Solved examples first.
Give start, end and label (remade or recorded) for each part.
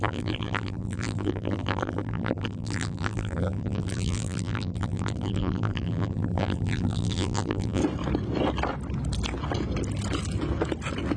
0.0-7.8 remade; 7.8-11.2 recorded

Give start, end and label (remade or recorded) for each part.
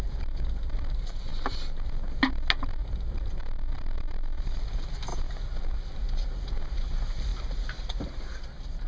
0.0-8.9 recorded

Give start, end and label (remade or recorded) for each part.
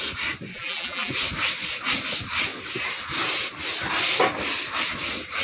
0.0-0.5 recorded; 0.5-1.1 remade; 1.1-5.4 recorded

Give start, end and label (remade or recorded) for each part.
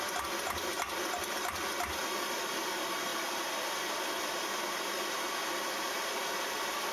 0.0-3.1 remade; 3.1-4.3 recorded; 4.3-6.9 remade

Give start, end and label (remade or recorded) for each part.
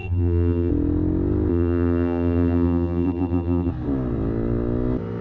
0.0-0.7 remade; 0.7-1.5 recorded; 1.5-3.7 remade; 3.7-5.2 recorded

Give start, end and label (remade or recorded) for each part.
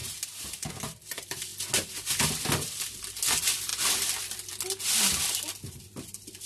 0.0-0.7 remade; 0.7-6.5 recorded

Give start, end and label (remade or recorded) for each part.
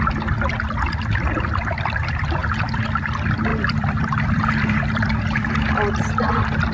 0.0-2.4 recorded; 2.4-3.0 remade; 3.0-3.5 recorded; 3.5-5.5 remade; 5.5-6.7 recorded